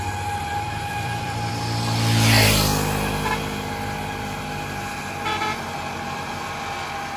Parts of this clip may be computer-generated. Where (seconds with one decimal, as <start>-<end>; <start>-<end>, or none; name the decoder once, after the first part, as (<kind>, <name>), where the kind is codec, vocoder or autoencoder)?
0.4-1.5 (vocoder, BigVGAN v2)